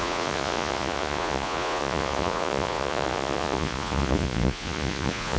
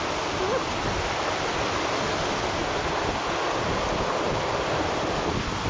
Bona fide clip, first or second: second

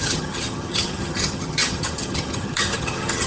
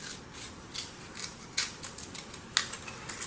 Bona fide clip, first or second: second